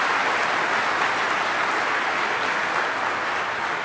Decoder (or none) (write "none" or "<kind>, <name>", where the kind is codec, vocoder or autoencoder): none